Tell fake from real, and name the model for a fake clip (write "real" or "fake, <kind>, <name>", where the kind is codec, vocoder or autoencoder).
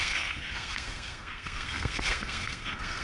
fake, codec, SNAC